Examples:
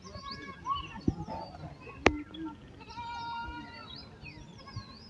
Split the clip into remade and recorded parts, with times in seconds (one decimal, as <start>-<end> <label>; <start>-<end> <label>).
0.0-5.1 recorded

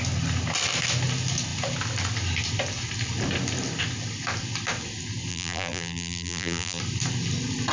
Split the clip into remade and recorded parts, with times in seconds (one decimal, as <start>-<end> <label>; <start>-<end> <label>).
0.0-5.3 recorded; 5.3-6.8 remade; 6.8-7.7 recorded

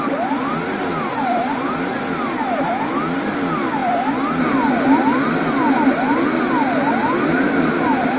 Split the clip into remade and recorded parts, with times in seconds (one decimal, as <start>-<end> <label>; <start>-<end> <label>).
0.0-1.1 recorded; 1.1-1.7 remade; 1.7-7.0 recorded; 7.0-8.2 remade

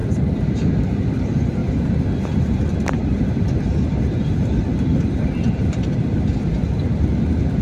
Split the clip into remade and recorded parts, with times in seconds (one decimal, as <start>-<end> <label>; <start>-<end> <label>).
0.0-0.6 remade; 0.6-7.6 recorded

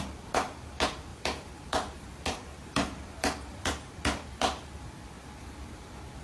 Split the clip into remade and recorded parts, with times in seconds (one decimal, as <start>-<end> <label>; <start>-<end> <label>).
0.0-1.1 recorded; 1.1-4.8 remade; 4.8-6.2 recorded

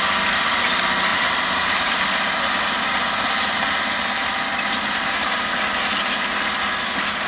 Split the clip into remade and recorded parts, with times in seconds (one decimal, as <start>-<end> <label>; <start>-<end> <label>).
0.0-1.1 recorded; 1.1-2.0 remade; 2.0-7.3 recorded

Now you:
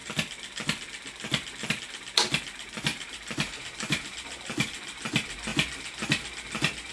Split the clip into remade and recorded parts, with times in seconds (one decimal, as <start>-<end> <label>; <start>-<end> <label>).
0.0-2.9 recorded; 2.9-5.0 remade; 5.0-6.9 recorded

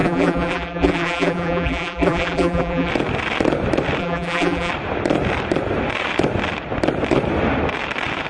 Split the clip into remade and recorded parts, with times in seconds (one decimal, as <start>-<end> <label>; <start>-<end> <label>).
0.0-2.9 remade; 2.9-4.0 recorded; 4.0-4.7 remade; 4.7-8.3 recorded